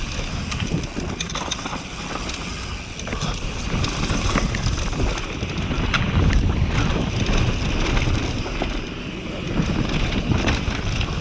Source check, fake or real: real